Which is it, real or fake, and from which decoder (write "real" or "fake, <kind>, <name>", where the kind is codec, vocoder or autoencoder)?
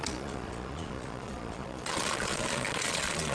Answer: fake, vocoder, Vocos